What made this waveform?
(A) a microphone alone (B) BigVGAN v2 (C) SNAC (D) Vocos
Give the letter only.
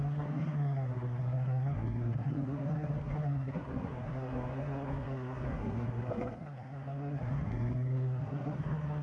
C